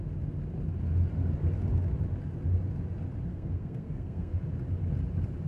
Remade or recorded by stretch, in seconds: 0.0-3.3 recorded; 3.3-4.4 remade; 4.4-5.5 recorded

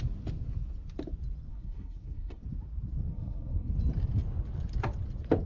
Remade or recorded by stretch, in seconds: 0.0-1.5 recorded; 1.5-2.4 remade; 2.4-3.1 recorded; 3.1-3.7 remade; 3.7-5.5 recorded

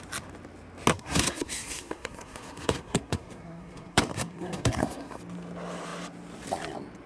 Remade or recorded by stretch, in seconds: 0.0-0.9 recorded; 0.9-5.2 remade; 5.2-7.1 recorded

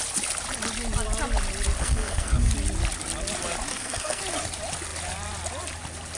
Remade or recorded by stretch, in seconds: 0.0-1.8 recorded; 1.8-2.5 remade; 2.5-3.7 recorded; 3.7-4.2 remade; 4.2-6.2 recorded

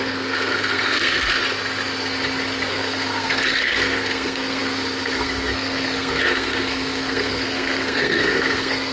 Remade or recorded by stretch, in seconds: 0.0-1.4 remade; 1.4-2.7 recorded; 2.7-8.9 remade